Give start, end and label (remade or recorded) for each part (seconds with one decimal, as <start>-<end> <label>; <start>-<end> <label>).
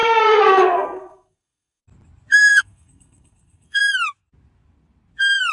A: 0.0-1.8 remade; 1.8-2.4 recorded; 2.4-3.8 remade; 3.8-5.5 recorded